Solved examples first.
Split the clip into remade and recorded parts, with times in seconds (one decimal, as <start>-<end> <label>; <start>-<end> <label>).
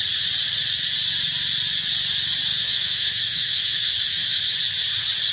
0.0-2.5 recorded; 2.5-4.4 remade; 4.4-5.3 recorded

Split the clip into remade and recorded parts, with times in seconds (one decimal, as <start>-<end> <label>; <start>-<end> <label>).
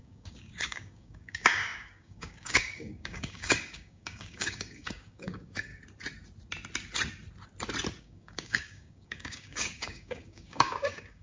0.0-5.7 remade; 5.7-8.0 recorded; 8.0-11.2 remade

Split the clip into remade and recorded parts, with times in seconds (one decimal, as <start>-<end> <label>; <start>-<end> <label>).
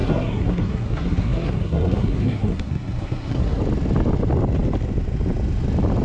0.0-3.6 remade; 3.6-6.0 recorded